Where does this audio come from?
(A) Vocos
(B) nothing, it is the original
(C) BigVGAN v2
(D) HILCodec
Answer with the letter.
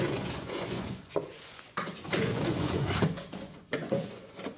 A